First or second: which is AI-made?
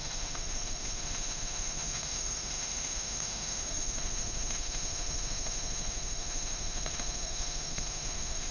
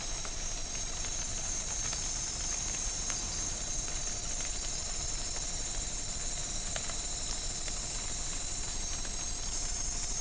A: first